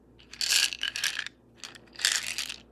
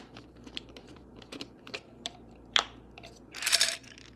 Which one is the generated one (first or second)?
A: second